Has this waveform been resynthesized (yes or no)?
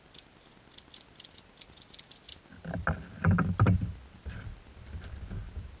no